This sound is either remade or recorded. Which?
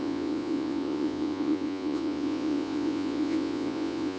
remade